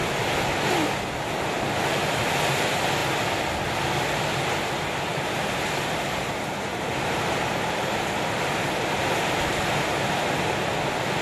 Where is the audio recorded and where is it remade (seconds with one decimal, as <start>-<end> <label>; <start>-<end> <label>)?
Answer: 0.0-5.1 recorded; 5.1-9.8 remade; 9.8-11.2 recorded